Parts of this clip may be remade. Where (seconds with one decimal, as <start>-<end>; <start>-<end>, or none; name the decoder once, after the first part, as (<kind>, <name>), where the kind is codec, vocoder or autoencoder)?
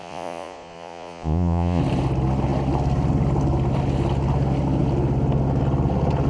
0.0-1.8 (vocoder, Vocos)